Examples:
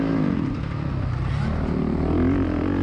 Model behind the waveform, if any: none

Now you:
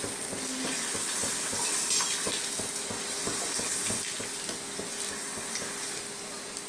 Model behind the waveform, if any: none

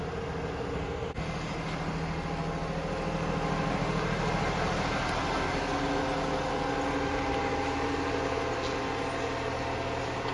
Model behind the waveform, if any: none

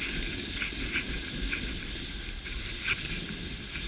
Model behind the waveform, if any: none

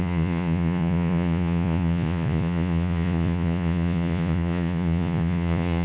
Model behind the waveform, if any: vocoder, Vocos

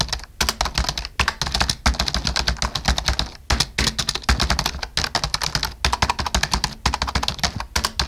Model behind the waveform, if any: none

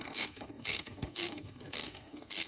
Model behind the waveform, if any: codec, SNAC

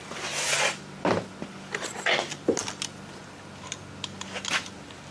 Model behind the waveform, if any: none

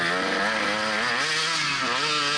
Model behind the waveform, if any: none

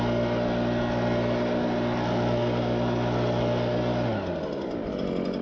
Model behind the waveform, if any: none